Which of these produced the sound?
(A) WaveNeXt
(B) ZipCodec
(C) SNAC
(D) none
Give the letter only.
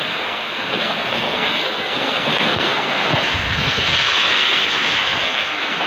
C